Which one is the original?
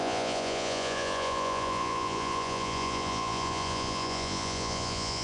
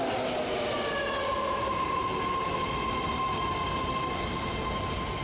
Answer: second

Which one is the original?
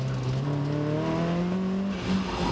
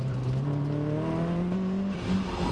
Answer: first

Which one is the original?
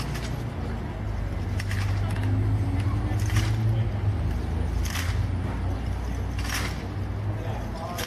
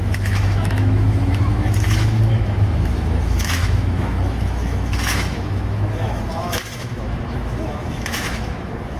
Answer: first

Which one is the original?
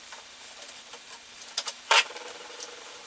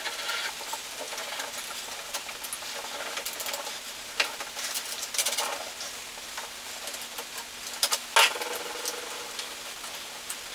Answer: second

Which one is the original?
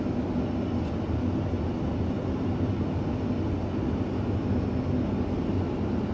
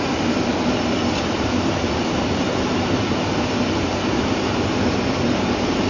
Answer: first